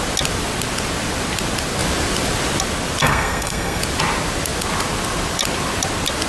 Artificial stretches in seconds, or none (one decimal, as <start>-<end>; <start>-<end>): 3.0-3.8